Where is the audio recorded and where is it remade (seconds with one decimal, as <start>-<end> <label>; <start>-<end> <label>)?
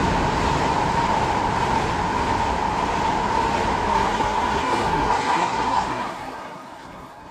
0.0-3.9 recorded; 3.9-7.3 remade